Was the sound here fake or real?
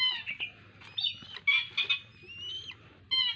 real